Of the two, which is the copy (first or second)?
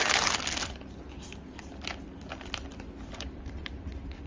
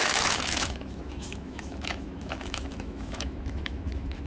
second